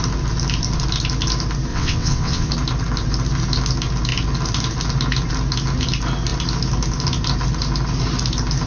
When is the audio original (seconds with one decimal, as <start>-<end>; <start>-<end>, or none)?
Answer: 0.0-1.7; 2.5-8.7